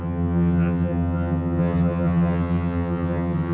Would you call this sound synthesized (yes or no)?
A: yes